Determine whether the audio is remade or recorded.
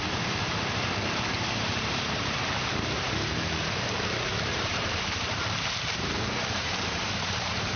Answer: remade